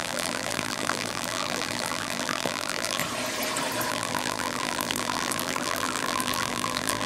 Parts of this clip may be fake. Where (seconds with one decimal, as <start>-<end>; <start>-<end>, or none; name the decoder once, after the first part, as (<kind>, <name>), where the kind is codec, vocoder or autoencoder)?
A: 0.0-3.0 (vocoder, BigVGAN v2); 3.9-7.1